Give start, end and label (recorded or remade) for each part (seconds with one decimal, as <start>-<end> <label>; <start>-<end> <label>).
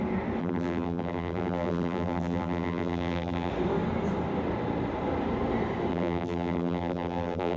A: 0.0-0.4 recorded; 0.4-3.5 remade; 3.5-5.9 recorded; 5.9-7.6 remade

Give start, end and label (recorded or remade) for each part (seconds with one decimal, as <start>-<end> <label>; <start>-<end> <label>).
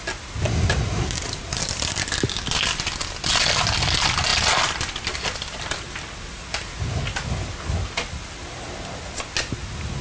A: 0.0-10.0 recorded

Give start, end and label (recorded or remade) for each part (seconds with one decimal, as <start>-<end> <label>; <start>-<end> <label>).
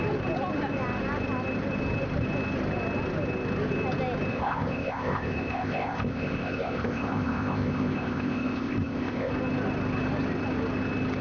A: 0.0-4.3 recorded; 4.3-9.3 remade; 9.3-11.2 recorded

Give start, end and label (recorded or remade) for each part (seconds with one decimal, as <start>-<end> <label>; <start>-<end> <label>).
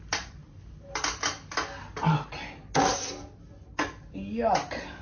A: 0.0-5.0 recorded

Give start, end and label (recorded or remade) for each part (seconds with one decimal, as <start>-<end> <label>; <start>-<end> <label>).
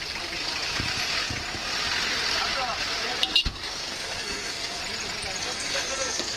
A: 0.0-3.4 recorded; 3.4-4.8 remade; 4.8-5.4 recorded; 5.4-6.4 remade